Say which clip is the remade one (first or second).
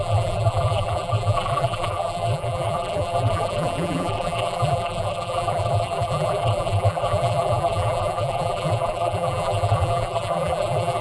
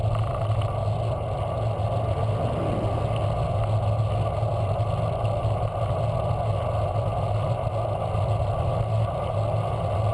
first